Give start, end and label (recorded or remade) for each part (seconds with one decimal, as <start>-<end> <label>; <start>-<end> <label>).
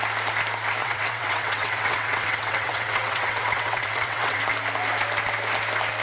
0.0-0.8 recorded; 0.8-4.4 remade; 4.4-6.0 recorded